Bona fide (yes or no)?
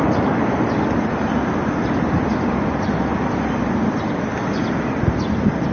yes